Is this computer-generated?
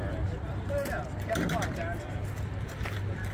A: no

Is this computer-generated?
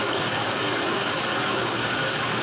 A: yes